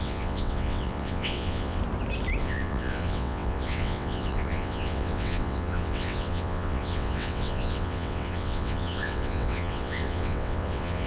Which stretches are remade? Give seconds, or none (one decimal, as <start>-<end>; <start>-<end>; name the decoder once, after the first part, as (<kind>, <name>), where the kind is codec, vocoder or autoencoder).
0.0-1.8 (vocoder, WaveNeXt); 2.4-11.1